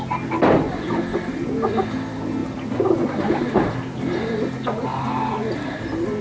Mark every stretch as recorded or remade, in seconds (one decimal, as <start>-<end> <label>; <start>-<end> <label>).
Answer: 0.0-6.2 recorded